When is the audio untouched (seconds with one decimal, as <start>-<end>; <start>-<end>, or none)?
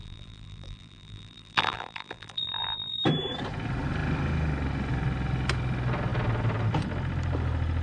3.0-7.8